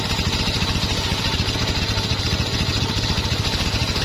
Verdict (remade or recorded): recorded